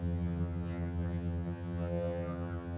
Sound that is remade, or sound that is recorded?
remade